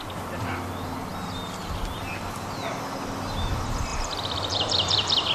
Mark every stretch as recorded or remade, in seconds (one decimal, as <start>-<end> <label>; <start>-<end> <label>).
0.0-3.9 recorded; 3.9-5.3 remade